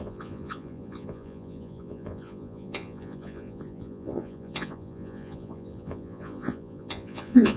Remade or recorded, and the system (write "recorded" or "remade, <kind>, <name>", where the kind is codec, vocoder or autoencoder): remade, vocoder, Vocos